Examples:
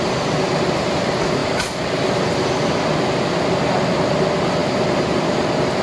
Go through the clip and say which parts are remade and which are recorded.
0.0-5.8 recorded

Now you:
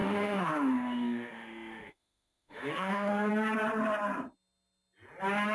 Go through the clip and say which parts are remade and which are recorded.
0.0-3.3 remade; 3.3-5.5 recorded

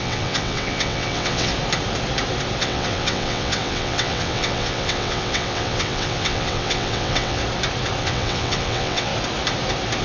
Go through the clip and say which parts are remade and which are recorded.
0.0-1.5 remade; 1.5-2.6 recorded; 2.6-7.4 remade; 7.4-8.0 recorded; 8.0-9.1 remade; 9.1-10.0 recorded

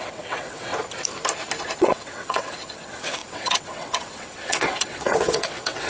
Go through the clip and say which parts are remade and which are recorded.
0.0-0.7 remade; 0.7-1.8 recorded; 1.8-5.9 remade

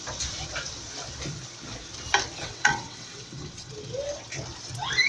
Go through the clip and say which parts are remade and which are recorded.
0.0-2.4 recorded; 2.4-3.7 remade; 3.7-5.1 recorded

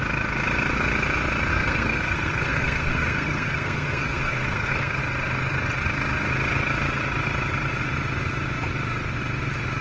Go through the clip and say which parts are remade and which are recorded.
0.0-1.5 recorded; 1.5-5.0 remade; 5.0-9.8 recorded

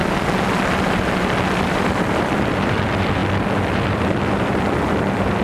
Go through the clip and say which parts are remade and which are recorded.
0.0-1.8 recorded; 1.8-3.2 remade; 3.2-3.7 recorded; 3.7-5.4 remade

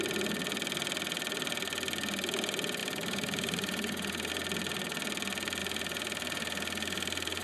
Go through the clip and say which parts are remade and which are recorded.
0.0-2.8 recorded; 2.8-4.3 remade; 4.3-5.6 recorded; 5.6-7.4 remade